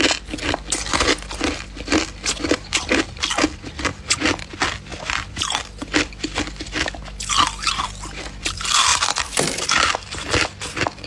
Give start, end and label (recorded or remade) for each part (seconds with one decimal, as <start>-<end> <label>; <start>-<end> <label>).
0.0-4.9 recorded; 4.9-6.5 remade; 6.5-11.1 recorded